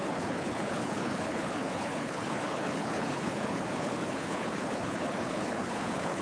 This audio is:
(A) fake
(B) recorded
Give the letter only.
A